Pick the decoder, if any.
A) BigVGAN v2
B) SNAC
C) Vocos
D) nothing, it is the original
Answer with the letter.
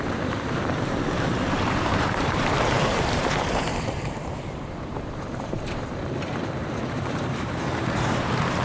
A